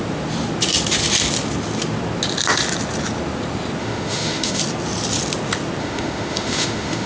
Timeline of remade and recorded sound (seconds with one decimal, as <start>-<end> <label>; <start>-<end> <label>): 0.0-3.8 recorded; 3.8-4.6 remade; 4.6-5.8 recorded; 5.8-7.1 remade